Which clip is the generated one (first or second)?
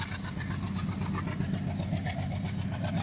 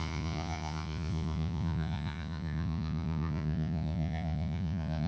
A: second